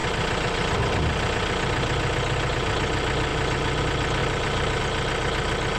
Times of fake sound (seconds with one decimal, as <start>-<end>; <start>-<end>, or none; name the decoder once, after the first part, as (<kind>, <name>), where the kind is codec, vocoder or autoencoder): 0.0-0.8 (vocoder, BigVGAN v2); 4.2-4.8